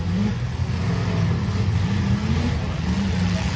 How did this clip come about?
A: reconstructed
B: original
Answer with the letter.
B